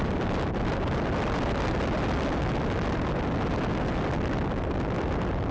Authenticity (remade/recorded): recorded